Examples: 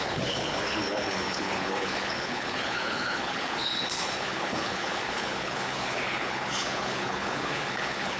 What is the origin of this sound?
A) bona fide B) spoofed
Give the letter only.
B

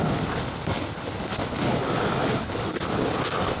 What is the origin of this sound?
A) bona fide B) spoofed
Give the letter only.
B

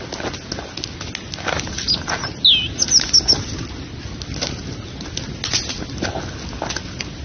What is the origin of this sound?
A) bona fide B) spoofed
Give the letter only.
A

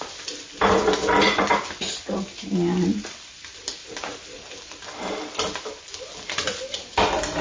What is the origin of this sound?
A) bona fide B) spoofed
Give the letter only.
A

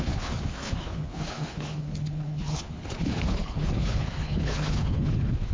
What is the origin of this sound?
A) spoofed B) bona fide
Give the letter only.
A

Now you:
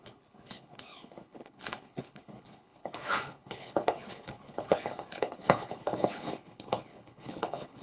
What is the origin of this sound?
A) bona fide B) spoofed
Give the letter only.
B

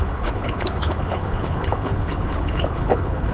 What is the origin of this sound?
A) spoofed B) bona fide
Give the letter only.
A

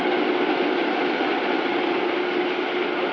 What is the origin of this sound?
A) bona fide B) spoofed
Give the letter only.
A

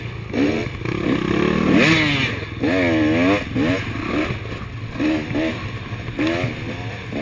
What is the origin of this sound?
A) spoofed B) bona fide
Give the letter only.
B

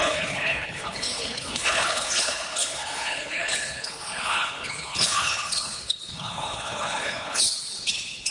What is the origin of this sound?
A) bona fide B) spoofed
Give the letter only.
B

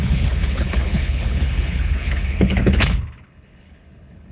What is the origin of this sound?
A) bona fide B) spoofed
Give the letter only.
B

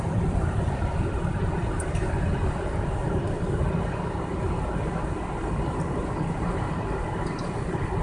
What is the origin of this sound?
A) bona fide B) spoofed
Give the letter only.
A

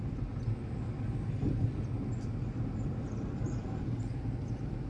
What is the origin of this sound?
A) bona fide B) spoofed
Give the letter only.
A